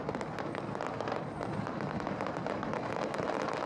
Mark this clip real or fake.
real